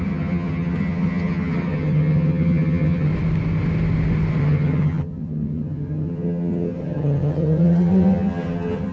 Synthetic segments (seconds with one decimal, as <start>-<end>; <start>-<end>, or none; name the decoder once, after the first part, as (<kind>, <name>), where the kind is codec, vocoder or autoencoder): 0.0-3.1 (vocoder, HiFi-GAN); 4.4-8.9